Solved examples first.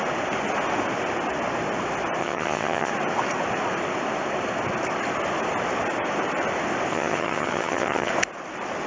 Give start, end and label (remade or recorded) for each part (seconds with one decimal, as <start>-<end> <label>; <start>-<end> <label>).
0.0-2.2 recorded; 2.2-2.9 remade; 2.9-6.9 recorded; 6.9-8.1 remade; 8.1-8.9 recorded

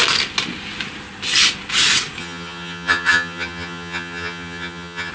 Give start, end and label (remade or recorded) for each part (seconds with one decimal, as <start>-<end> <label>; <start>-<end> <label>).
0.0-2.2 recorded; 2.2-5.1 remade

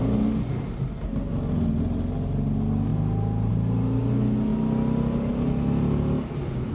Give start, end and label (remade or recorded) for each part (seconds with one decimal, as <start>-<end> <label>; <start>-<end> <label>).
0.0-6.7 recorded

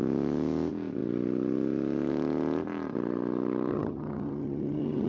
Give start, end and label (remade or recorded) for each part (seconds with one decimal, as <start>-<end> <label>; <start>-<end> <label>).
0.0-3.7 recorded; 3.7-5.1 remade

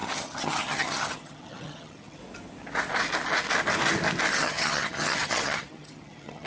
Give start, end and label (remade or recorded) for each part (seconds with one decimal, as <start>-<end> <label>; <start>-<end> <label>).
0.0-2.2 remade; 2.2-4.4 recorded; 4.4-6.5 remade